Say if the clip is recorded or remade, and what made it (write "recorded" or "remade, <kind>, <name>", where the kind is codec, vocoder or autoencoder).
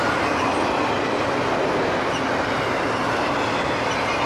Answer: recorded